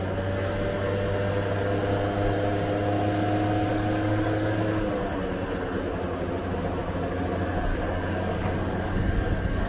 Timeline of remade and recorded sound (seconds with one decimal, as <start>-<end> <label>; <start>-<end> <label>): 0.0-3.7 recorded; 3.7-5.0 remade; 5.0-7.7 recorded; 7.7-9.7 remade